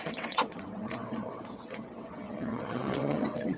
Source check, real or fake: fake